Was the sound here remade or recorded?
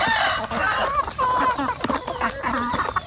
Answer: recorded